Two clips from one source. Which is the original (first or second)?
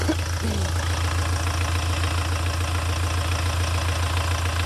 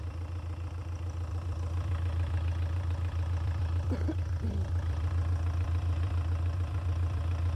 first